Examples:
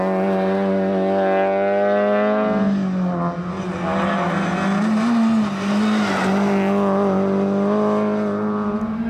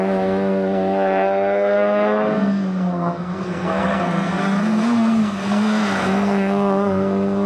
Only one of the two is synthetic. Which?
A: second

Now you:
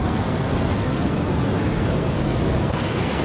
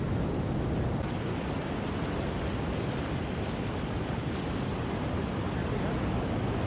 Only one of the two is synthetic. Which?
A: first